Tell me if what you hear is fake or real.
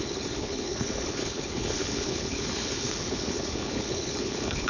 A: fake